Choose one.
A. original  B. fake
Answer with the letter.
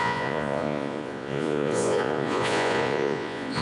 B